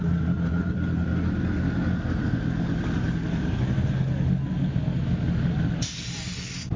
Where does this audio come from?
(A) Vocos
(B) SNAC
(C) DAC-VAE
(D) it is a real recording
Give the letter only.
D